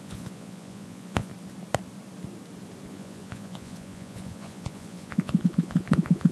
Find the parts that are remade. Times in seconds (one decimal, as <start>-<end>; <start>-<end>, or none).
0.0-1.3; 2.9-6.3

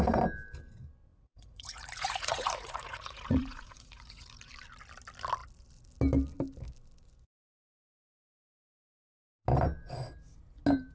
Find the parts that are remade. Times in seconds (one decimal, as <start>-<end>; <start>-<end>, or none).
1.1-4.5

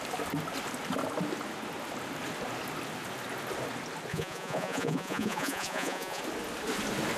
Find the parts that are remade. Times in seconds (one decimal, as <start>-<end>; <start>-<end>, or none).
4.1-6.2

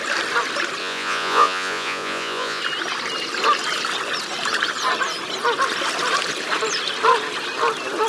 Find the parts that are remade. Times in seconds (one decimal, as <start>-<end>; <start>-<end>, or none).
0.8-2.6